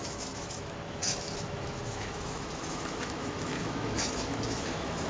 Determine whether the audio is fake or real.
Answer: fake